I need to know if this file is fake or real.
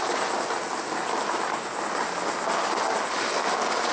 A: real